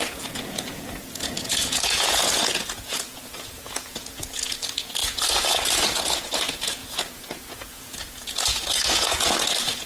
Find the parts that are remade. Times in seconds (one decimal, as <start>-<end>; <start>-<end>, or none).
0.0-9.9